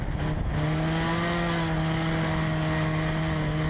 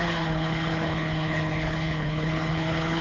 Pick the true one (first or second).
first